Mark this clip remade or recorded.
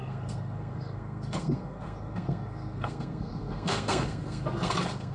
remade